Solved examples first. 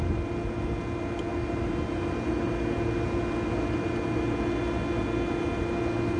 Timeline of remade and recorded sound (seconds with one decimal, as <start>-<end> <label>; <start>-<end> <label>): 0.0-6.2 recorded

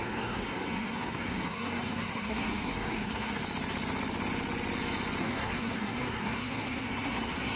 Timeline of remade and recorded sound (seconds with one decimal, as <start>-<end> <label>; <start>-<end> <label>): 0.0-3.4 remade; 3.4-5.2 recorded; 5.2-7.6 remade

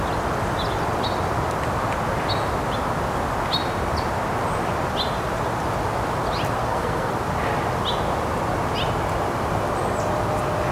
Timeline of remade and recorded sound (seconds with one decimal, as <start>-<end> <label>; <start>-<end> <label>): 0.0-6.6 recorded; 6.6-7.1 remade; 7.1-10.7 recorded

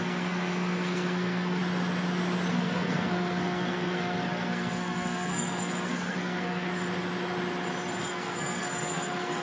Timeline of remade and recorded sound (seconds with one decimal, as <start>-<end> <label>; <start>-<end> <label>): 0.0-1.6 remade; 1.6-2.5 recorded; 2.5-6.7 remade; 6.7-8.0 recorded; 8.0-9.4 remade